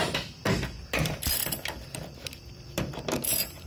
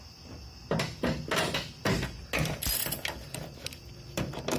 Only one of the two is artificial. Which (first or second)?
first